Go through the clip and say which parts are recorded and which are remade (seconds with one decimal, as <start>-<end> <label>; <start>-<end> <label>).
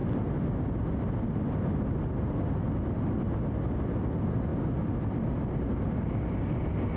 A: 0.0-7.0 recorded